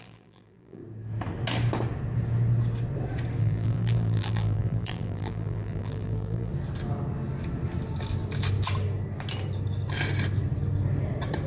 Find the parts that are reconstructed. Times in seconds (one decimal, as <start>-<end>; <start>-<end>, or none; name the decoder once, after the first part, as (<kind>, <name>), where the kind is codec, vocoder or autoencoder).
0.0-0.8 (vocoder, BigVGAN v2); 3.4-6.5